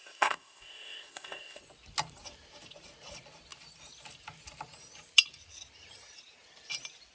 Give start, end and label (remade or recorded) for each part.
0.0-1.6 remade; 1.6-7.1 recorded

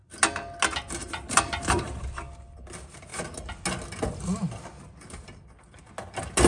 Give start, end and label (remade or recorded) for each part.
0.0-1.0 recorded; 1.0-2.0 remade; 2.0-6.5 recorded

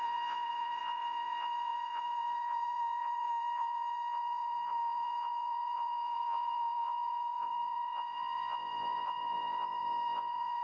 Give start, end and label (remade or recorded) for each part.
0.0-10.6 remade

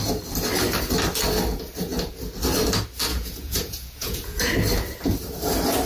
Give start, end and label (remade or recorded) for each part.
0.0-3.1 recorded; 3.1-4.4 remade; 4.4-5.9 recorded